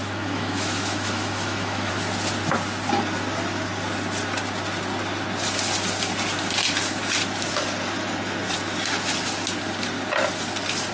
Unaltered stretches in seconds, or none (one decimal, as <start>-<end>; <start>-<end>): 1.9-10.9